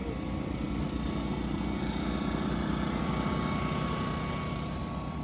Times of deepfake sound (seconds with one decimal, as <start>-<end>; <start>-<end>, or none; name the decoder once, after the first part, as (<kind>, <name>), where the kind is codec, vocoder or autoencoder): none